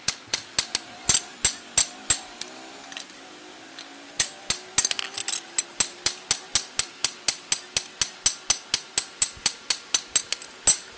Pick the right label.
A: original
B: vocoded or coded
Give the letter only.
A